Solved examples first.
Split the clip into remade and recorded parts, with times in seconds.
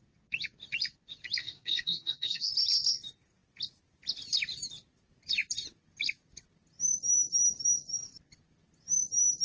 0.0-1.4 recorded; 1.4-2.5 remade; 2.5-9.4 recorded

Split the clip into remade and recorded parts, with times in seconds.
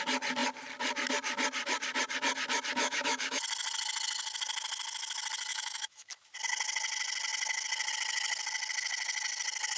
0.0-2.8 recorded; 2.8-3.4 remade; 3.4-5.5 recorded; 5.5-6.1 remade; 6.1-9.8 recorded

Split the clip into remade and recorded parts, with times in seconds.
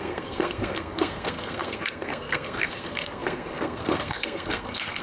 0.0-5.0 remade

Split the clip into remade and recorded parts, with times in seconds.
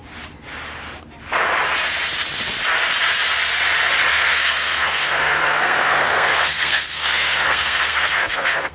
0.0-4.1 recorded; 4.1-8.7 remade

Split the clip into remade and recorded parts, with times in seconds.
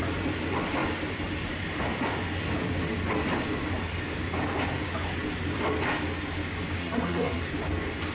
0.0-6.8 recorded; 6.8-7.4 remade; 7.4-8.1 recorded